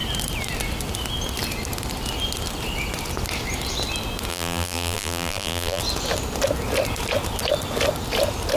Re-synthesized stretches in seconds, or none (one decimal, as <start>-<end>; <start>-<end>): 4.3-5.8